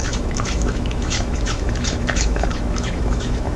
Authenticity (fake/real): fake